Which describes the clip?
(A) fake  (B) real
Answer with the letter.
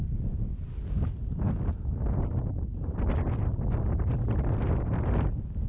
B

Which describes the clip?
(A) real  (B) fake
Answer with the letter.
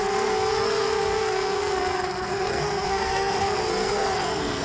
B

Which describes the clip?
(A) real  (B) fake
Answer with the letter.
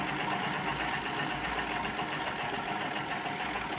A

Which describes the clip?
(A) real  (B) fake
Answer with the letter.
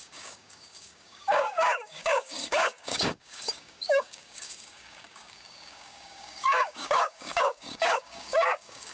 B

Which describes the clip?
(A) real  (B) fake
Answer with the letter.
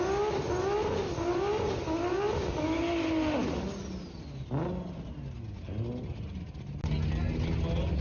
A